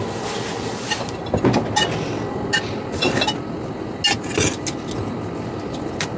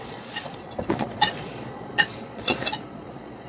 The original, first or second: first